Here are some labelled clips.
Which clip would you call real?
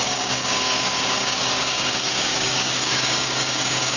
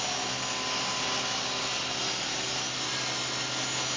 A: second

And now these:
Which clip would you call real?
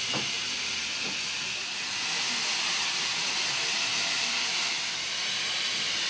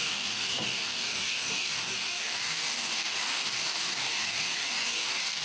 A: first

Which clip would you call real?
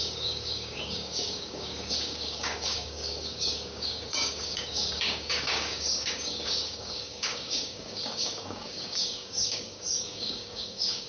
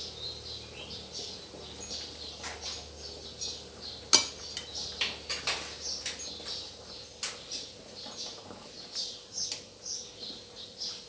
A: second